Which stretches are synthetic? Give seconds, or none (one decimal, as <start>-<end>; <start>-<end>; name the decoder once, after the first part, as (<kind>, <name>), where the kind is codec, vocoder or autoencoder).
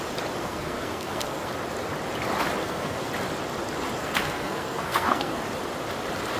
0.4-1.5 (codec, SNAC); 2.6-3.1; 4.0-5.4